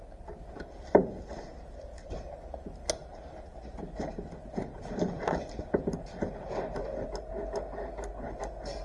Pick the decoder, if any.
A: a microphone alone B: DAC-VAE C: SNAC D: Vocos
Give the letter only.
A